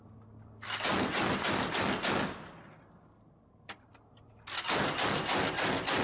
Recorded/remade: recorded